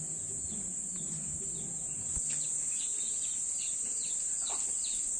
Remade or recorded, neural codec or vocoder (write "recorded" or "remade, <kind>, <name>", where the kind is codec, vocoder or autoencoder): recorded